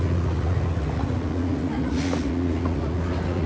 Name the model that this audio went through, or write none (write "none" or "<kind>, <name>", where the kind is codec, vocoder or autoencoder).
vocoder, Vocos